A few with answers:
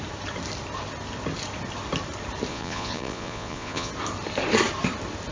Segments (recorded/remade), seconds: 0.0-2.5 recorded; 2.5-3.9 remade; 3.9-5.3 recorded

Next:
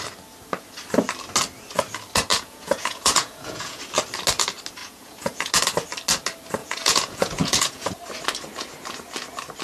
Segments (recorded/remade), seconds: 0.0-2.3 recorded; 2.3-3.8 remade; 3.8-4.8 recorded; 4.8-5.5 remade; 5.5-6.6 recorded; 6.6-7.9 remade; 7.9-9.6 recorded